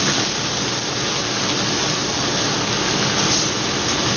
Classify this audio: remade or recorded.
recorded